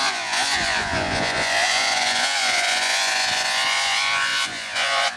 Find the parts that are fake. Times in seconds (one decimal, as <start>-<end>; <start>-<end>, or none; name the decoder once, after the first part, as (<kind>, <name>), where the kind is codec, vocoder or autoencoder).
0.0-5.2 (vocoder, Vocos)